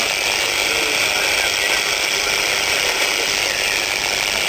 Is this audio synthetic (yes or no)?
no